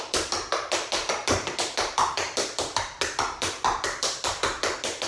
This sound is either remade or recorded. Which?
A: remade